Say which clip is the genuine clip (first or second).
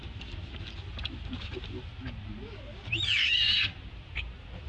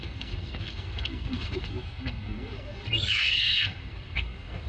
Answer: first